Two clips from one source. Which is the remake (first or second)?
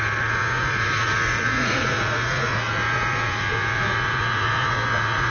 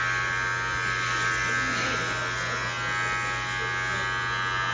first